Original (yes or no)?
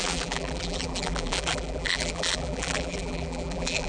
no